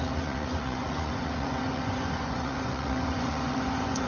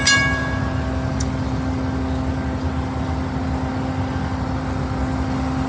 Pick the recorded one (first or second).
second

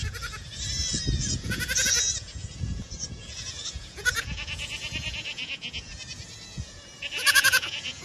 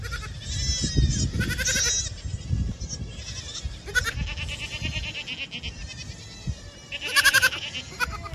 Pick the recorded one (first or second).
second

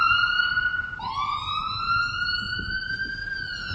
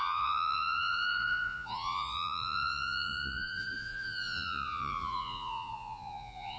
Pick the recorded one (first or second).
first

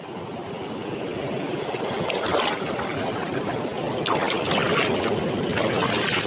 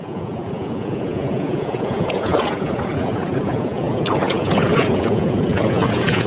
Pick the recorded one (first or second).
first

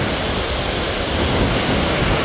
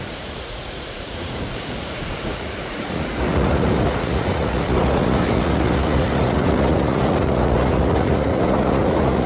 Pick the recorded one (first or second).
first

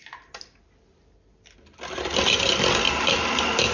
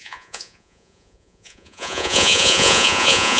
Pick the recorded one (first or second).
first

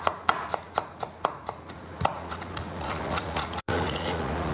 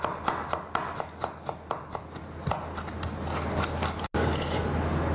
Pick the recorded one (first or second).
second